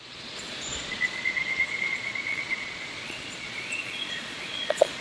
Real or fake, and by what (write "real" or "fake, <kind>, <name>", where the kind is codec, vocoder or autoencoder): fake, vocoder, Vocos